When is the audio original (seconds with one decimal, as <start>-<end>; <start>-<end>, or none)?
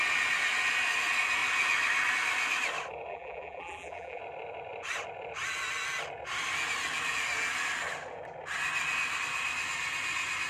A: 0.0-3.1; 4.2-10.5